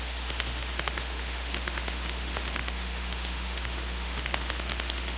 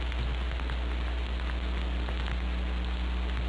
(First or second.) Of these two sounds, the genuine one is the second